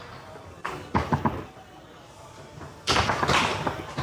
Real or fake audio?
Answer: fake